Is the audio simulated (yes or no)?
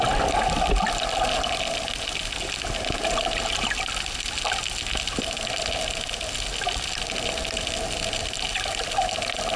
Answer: no